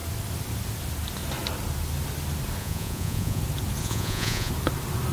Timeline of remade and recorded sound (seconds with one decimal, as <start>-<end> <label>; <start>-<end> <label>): 0.0-2.6 recorded; 2.6-3.4 remade; 3.4-3.8 recorded; 3.8-4.5 remade; 4.5-5.1 recorded